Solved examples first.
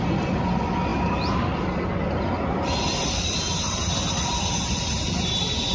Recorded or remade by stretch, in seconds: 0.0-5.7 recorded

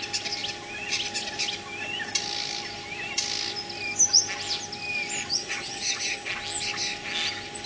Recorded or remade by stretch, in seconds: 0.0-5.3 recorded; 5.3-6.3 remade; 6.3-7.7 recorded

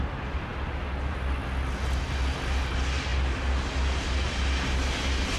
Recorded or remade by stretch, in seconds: 0.0-5.4 recorded

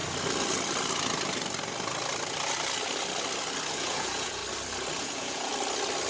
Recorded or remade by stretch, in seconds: 0.0-3.7 recorded; 3.7-4.4 remade; 4.4-5.0 recorded; 5.0-5.5 remade; 5.5-6.1 recorded

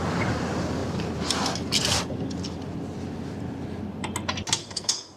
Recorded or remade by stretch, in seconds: 0.0-4.6 recorded; 4.6-5.2 remade

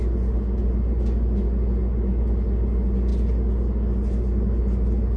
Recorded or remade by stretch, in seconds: 0.0-5.2 recorded

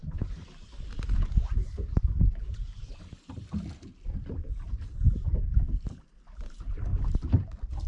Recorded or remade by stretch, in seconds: 0.0-1.6 recorded; 1.6-2.4 remade; 2.4-6.9 recorded; 6.9-7.9 remade

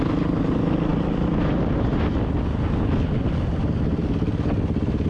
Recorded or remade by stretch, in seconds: 0.0-5.1 recorded